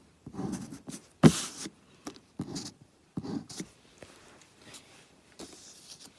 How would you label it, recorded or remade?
remade